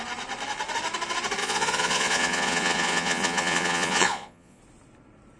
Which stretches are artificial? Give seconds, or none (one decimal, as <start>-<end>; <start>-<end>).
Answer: 1.4-4.6